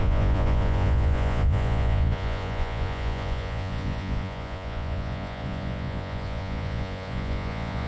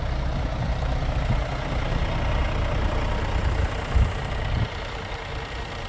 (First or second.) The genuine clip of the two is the second